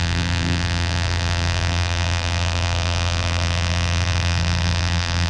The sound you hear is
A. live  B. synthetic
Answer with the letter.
B